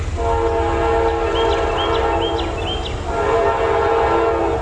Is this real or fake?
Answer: real